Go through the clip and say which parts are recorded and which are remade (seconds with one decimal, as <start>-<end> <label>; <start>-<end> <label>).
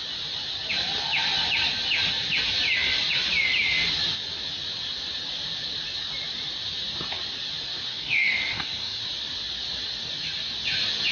0.0-7.9 recorded; 7.9-9.0 remade; 9.0-11.1 recorded